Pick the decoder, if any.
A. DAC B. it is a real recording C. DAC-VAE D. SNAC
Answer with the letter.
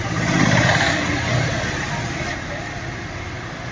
B